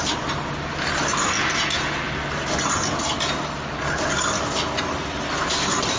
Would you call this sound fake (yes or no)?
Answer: no